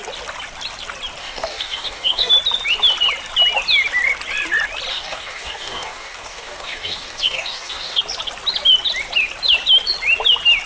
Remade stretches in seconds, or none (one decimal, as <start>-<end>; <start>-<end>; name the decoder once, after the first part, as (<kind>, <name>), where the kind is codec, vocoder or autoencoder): 1.2-2.3 (codec, DAC); 4.9-8.0